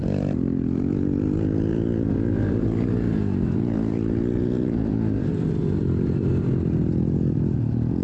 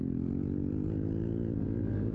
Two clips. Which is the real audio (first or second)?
second